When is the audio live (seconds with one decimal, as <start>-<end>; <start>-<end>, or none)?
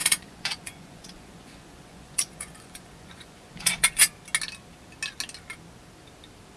4.0-6.6